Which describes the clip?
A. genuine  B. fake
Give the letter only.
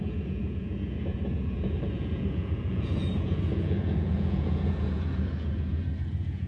B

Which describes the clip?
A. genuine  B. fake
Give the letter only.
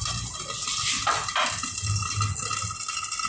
A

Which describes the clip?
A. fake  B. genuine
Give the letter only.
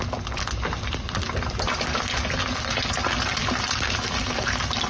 B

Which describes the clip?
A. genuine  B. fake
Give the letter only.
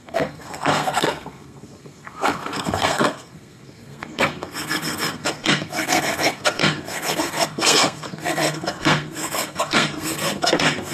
B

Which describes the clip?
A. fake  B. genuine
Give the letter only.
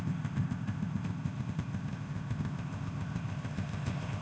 A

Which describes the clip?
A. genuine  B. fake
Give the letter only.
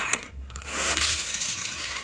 B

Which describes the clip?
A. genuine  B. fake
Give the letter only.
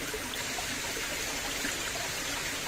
A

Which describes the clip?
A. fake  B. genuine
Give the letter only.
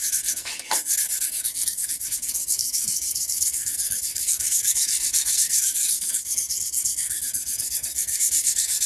A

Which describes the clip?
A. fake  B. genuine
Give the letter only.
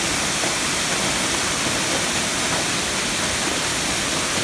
B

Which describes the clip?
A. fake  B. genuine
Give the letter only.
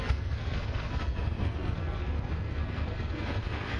A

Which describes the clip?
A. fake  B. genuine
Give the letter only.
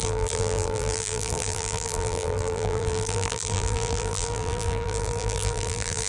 A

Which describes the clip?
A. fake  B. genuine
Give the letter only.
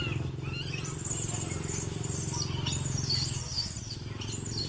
B